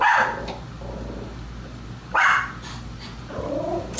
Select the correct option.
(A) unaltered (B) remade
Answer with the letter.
A